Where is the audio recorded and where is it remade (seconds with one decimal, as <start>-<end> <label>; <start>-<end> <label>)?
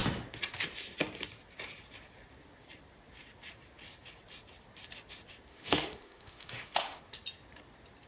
0.0-5.5 recorded; 5.5-7.0 remade; 7.0-8.1 recorded